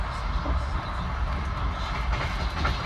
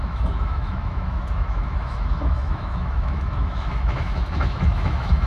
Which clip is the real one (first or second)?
first